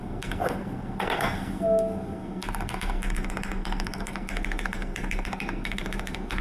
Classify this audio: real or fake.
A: fake